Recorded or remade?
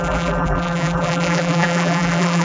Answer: remade